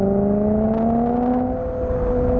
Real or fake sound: real